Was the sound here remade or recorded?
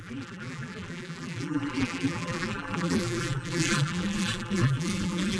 remade